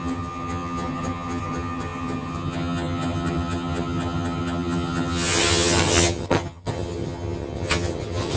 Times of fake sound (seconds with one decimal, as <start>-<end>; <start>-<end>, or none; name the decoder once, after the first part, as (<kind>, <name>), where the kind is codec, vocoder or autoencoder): 0.0-8.4 (vocoder, HiFi-GAN)